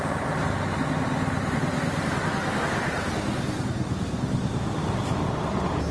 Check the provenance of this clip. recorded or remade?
recorded